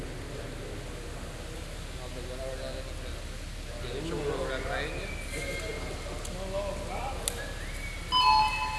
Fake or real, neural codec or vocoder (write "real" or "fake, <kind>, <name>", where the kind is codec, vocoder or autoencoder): real